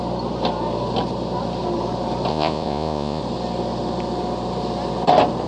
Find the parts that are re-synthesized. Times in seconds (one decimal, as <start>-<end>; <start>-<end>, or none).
2.3-3.2